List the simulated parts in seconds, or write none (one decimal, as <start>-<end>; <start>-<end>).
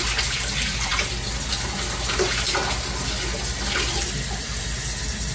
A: none